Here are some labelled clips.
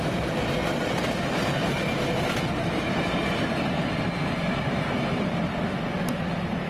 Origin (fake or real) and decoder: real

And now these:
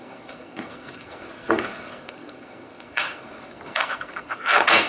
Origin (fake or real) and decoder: fake, codec, SNAC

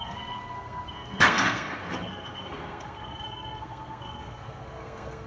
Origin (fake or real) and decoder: fake, codec, SNAC